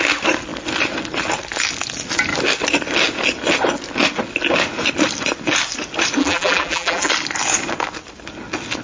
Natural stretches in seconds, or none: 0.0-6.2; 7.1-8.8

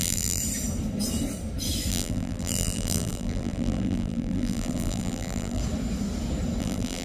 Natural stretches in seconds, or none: 0.4-1.9; 5.6-6.6

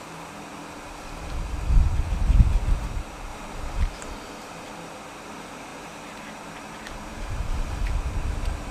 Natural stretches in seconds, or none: 0.0-3.3; 3.8-5.7; 7.9-8.7

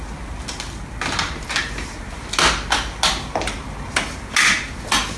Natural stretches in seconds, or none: 0.0-5.2

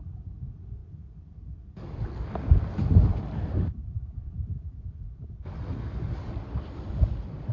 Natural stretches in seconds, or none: none

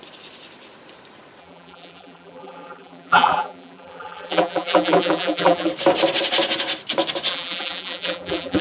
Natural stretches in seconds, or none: 0.0-1.4; 5.7-7.3

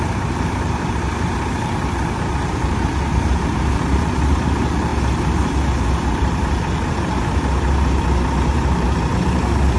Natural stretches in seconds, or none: none